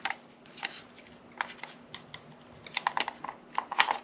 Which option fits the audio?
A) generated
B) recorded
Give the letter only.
B